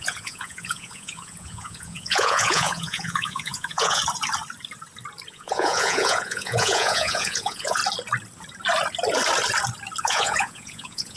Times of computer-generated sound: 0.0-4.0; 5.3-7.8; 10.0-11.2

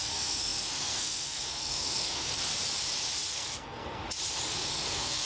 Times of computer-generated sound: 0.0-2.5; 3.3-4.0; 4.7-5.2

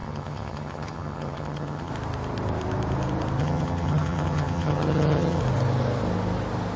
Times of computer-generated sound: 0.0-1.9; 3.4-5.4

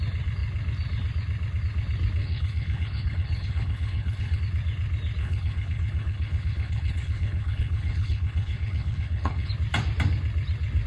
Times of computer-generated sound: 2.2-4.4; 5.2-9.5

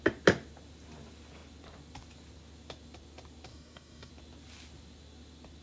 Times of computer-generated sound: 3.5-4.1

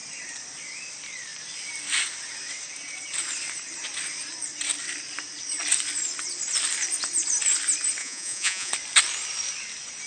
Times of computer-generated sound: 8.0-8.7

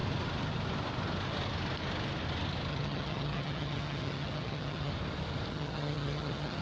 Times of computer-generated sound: 2.7-4.9; 5.5-6.6